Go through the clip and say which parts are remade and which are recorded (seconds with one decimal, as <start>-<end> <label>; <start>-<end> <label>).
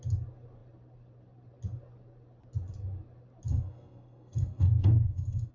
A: 0.0-3.5 recorded; 3.5-5.5 remade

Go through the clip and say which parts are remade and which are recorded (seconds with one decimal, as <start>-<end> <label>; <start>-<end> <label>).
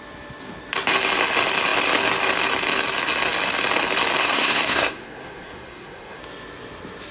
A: 0.0-4.2 recorded; 4.2-6.2 remade; 6.2-7.1 recorded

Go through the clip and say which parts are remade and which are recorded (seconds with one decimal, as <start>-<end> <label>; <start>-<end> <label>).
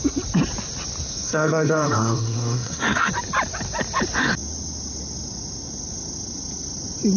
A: 0.0-1.1 recorded; 1.1-3.1 remade; 3.1-7.2 recorded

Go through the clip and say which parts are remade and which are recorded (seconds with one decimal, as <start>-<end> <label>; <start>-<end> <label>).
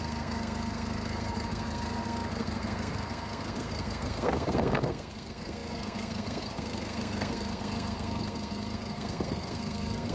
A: 0.0-10.1 remade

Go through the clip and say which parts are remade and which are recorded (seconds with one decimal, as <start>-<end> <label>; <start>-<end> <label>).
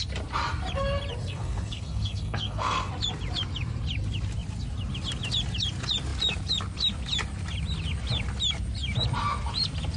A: 0.0-1.2 recorded; 1.2-2.9 remade; 2.9-10.0 recorded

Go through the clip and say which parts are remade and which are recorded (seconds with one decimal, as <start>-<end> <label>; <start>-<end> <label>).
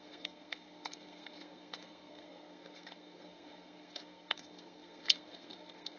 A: 0.0-6.0 remade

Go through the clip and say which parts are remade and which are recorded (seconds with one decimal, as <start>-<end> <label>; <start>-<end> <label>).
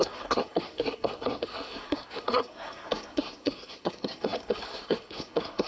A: 0.0-5.7 remade